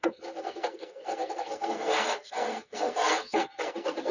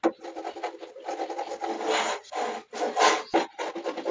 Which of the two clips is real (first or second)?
second